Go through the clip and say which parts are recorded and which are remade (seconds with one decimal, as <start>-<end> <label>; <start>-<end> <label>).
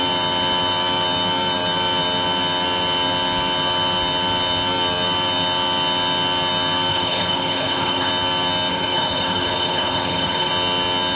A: 0.0-6.9 recorded; 6.9-8.1 remade; 8.1-8.7 recorded; 8.7-10.5 remade; 10.5-11.2 recorded